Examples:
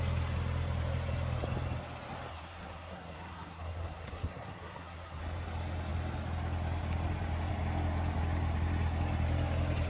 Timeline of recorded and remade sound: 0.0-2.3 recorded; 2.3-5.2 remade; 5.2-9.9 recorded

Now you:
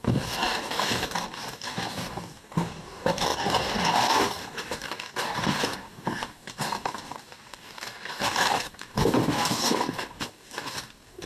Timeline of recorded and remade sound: 0.0-11.3 remade

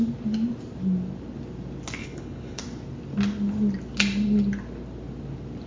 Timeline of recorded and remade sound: 0.0-2.0 recorded; 2.0-2.6 remade; 2.6-5.7 recorded

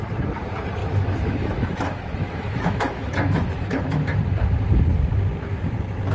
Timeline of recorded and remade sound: 0.0-0.8 recorded; 0.8-4.2 remade; 4.2-6.1 recorded

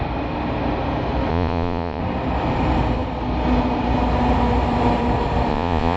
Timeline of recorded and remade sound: 0.0-1.3 recorded; 1.3-2.0 remade; 2.0-5.5 recorded; 5.5-6.0 remade

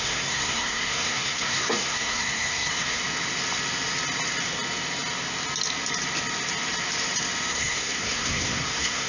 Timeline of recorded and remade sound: 0.0-3.0 remade; 3.0-7.5 recorded; 7.5-9.1 remade